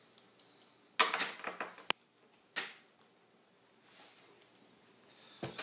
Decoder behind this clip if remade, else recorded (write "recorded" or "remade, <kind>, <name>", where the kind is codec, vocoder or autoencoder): recorded